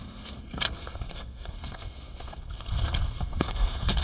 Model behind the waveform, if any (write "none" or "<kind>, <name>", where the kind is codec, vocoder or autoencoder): codec, SNAC